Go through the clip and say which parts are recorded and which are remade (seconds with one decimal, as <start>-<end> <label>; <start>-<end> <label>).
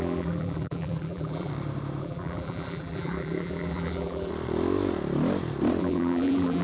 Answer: 0.0-1.5 remade; 1.5-2.0 recorded; 2.0-4.3 remade; 4.3-5.8 recorded; 5.8-6.6 remade